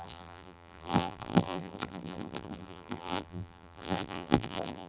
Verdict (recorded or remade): remade